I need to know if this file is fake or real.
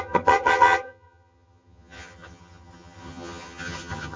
fake